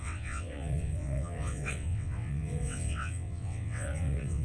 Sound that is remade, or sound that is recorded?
remade